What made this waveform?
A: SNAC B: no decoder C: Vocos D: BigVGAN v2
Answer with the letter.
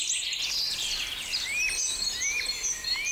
B